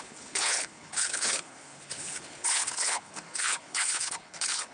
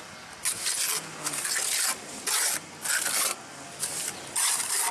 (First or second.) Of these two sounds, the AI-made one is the first